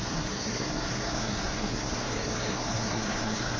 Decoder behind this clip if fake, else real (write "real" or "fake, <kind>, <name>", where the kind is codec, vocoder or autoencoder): fake, codec, SNAC